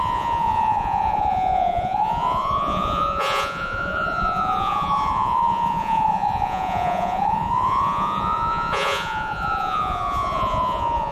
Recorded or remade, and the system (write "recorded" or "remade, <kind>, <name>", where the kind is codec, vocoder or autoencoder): remade, vocoder, Vocos